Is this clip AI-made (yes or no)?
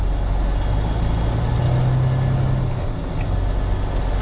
no